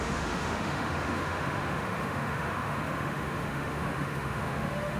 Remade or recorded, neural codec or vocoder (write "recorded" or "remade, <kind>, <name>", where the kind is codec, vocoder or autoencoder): remade, autoencoder, DAC-VAE